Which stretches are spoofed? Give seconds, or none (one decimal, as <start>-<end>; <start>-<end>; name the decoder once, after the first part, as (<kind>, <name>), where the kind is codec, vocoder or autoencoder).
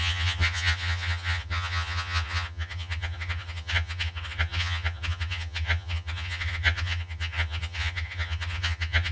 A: 0.0-9.1 (vocoder, HiFi-GAN)